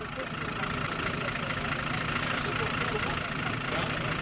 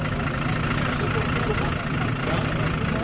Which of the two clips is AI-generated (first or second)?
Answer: first